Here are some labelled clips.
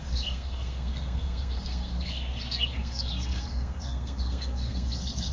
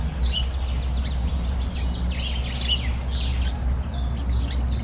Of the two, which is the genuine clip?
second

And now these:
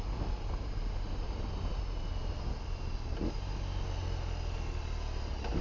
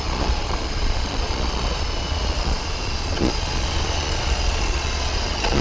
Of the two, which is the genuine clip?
first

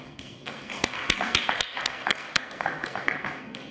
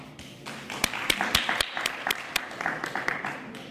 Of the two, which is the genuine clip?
second